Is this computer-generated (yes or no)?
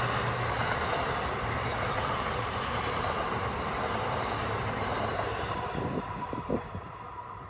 yes